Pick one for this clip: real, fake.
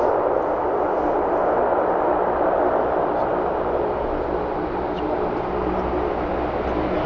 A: real